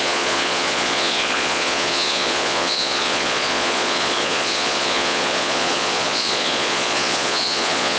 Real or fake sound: fake